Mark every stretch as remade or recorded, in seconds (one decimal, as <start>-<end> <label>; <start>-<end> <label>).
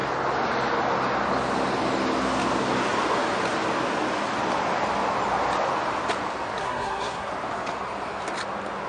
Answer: 0.0-6.6 recorded; 6.6-7.3 remade; 7.3-8.9 recorded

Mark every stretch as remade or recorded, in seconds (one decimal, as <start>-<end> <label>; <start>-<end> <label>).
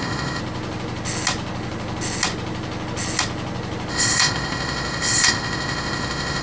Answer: 0.0-0.4 remade; 0.4-3.9 recorded; 3.9-6.4 remade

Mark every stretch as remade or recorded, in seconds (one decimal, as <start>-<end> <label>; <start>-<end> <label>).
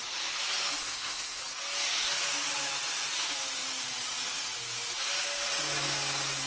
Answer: 0.0-0.8 recorded; 0.8-1.4 remade; 1.4-6.5 recorded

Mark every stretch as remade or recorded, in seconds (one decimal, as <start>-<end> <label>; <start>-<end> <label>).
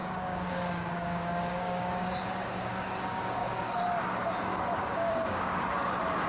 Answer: 0.0-3.8 remade; 3.8-4.5 recorded; 4.5-5.7 remade; 5.7-6.3 recorded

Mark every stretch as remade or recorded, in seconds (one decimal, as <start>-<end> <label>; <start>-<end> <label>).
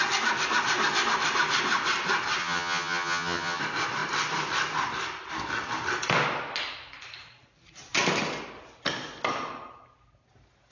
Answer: 0.0-2.4 recorded; 2.4-3.6 remade; 3.6-10.7 recorded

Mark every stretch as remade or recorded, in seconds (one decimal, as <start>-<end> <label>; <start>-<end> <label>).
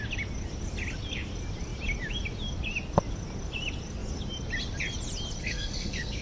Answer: 0.0-5.4 recorded; 5.4-6.2 remade